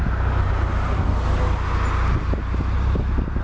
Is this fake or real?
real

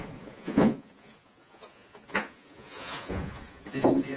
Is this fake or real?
fake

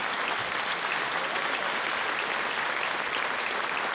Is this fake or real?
real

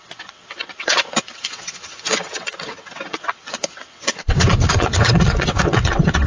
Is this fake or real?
fake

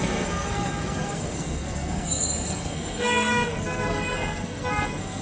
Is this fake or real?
fake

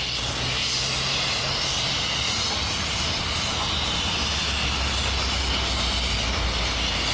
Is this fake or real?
real